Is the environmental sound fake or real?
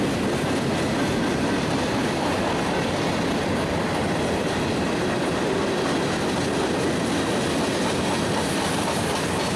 real